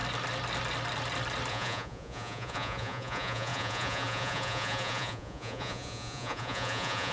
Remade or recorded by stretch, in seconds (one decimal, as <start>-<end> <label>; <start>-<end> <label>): 0.0-1.5 recorded; 1.5-7.1 remade